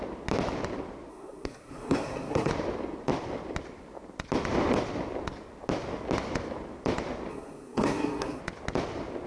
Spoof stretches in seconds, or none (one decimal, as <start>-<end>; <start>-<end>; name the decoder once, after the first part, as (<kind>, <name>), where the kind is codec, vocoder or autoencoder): 1.1-2.5 (codec, SNAC); 7.3-8.4